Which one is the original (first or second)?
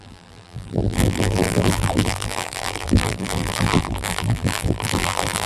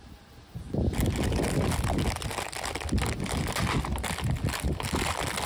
second